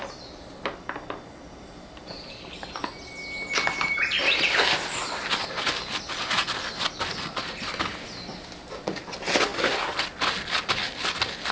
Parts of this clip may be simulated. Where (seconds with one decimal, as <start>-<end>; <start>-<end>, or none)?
none

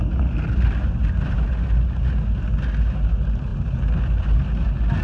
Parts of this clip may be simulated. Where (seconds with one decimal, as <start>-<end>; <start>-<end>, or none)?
none

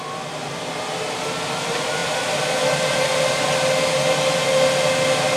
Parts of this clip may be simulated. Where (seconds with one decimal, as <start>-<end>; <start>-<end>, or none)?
none

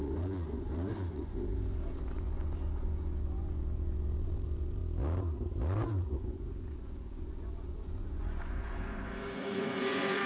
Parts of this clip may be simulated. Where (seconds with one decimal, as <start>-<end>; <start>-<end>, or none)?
0.0-4.8; 5.9-10.3

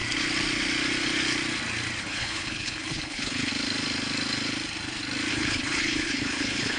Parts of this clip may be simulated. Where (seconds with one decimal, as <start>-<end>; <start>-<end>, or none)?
2.0-3.5; 5.3-6.8

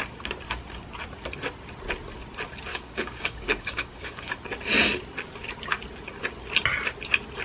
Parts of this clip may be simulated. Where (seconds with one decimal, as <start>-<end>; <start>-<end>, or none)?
2.7-4.3

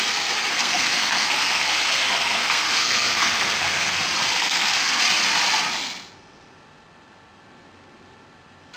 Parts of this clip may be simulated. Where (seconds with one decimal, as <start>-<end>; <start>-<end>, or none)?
0.5-4.0; 4.4-5.0

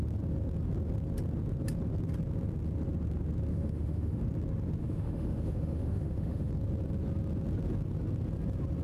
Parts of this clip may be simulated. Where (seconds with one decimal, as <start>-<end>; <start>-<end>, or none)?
3.5-4.2; 4.8-6.5